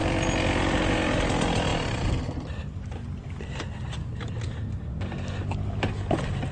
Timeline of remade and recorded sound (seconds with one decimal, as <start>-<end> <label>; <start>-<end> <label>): 0.0-6.5 recorded